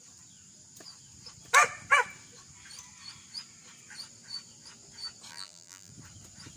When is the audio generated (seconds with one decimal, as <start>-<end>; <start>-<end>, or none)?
5.3-5.9

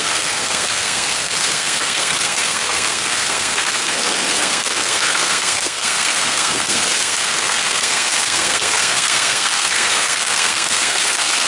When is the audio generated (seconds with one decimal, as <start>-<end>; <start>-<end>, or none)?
0.0-11.5

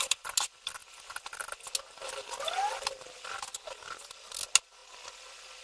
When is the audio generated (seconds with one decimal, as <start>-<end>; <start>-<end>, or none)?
none

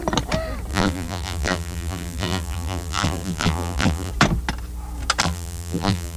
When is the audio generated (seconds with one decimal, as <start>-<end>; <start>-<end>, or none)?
0.7-4.1; 5.2-6.2